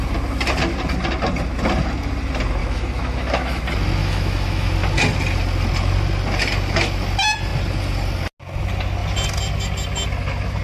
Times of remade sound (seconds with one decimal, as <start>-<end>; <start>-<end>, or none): 2.6-3.6; 4.0-4.7